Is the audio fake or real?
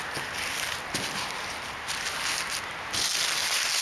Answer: real